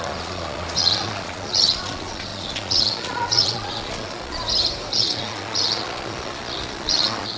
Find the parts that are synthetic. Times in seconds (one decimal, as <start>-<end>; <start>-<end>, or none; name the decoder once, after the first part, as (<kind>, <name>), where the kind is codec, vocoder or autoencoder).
0.0-4.4 (vocoder, Vocos); 4.9-7.4